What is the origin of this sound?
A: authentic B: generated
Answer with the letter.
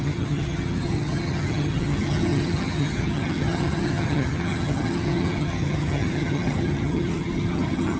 B